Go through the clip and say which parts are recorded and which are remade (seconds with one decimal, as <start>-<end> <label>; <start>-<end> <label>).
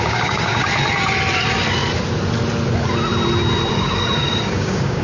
0.0-0.7 remade; 0.7-3.7 recorded; 3.7-5.0 remade